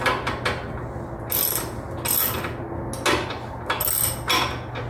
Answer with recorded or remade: recorded